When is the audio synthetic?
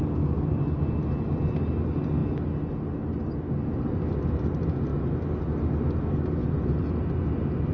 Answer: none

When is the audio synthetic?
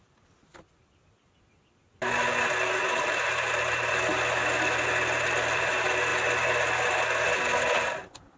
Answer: none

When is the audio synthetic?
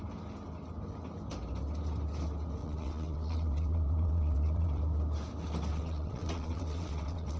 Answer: 2.6-4.8 (vocoder, WaveNeXt); 5.7-7.4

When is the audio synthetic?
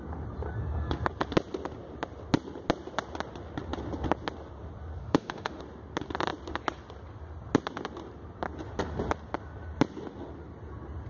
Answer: 5.0-5.6 (autoencoder, DAC-VAE)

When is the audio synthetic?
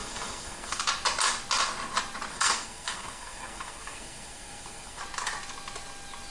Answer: 0.0-0.8 (codec, SNAC); 2.3-5.0